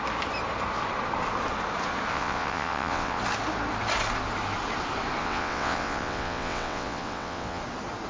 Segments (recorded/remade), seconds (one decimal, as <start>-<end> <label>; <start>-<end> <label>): 0.0-2.1 recorded; 2.1-3.2 remade; 3.2-5.2 recorded; 5.2-7.6 remade; 7.6-8.1 recorded